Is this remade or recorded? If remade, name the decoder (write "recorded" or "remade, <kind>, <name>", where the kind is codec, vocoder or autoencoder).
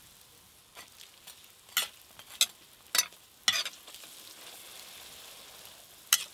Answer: recorded